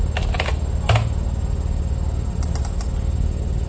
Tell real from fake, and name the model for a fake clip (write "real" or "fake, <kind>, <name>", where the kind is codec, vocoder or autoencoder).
real